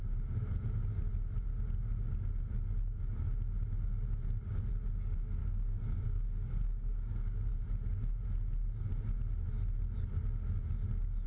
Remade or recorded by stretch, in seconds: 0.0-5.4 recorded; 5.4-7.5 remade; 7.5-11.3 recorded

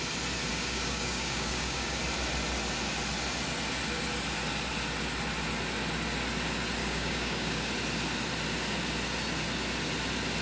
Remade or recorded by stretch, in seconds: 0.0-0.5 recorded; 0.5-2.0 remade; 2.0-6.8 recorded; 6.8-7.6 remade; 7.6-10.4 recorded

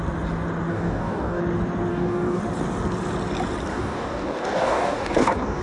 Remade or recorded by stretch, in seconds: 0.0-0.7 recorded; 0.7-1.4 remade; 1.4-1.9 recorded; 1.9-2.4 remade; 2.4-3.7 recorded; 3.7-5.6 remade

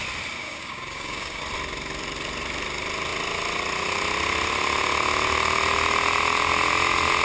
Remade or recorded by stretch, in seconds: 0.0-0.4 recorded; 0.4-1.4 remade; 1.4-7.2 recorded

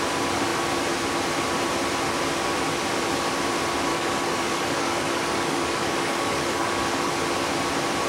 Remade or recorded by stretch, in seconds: 0.0-3.9 recorded; 3.9-7.1 remade; 7.1-8.1 recorded